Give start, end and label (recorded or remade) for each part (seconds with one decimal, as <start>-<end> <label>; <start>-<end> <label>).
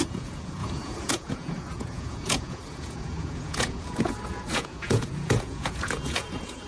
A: 0.0-6.7 remade